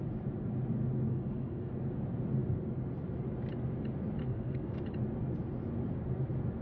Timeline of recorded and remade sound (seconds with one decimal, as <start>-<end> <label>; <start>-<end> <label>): 0.0-1.1 recorded; 1.1-1.7 remade; 1.7-4.2 recorded; 4.2-4.8 remade; 4.8-6.6 recorded